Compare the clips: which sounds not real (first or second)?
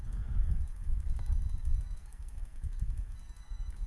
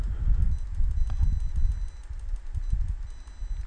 first